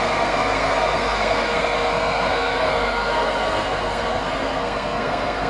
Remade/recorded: remade